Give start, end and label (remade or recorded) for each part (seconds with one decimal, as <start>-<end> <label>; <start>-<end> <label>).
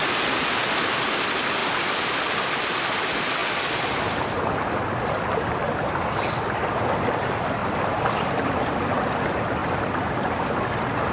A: 0.0-1.6 recorded; 1.6-2.8 remade; 2.8-7.6 recorded; 7.6-9.1 remade; 9.1-9.6 recorded; 9.6-11.1 remade